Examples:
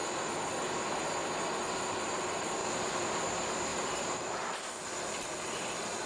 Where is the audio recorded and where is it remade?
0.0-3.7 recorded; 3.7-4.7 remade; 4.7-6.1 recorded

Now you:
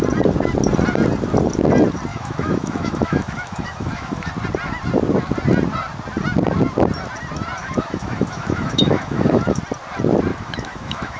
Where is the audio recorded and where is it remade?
0.0-2.1 recorded; 2.1-4.3 remade; 4.3-7.6 recorded; 7.6-9.6 remade; 9.6-10.3 recorded; 10.3-11.2 remade

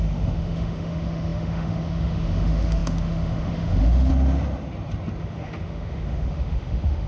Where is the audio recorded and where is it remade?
0.0-4.1 remade; 4.1-5.2 recorded; 5.2-7.1 remade

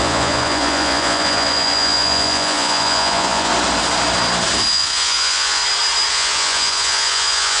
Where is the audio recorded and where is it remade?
0.0-3.5 remade; 3.5-4.7 recorded; 4.7-5.6 remade; 5.6-6.1 recorded; 6.1-7.6 remade

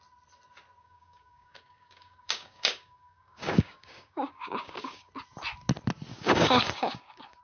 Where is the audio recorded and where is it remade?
0.0-0.8 recorded; 0.8-5.1 remade; 5.1-6.1 recorded; 6.1-7.4 remade

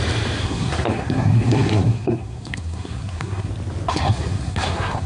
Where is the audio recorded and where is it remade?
0.0-0.4 recorded; 0.4-3.5 remade; 3.5-3.9 recorded; 3.9-5.1 remade

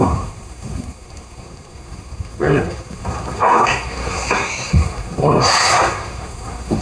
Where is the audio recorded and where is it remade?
0.0-6.8 remade